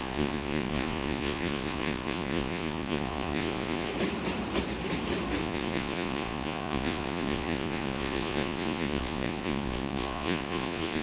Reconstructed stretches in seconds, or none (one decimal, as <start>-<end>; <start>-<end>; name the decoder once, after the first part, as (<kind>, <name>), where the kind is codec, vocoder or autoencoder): 0.0-3.9 (vocoder, Vocos); 5.4-11.0

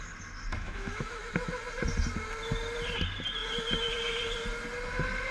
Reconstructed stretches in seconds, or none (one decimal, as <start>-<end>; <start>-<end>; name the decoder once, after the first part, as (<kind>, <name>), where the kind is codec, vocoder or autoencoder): 0.5-1.2 (autoencoder, DAC-VAE)